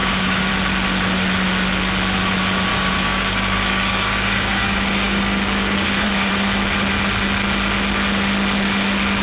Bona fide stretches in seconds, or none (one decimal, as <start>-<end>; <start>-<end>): 0.5-2.7; 6.3-9.2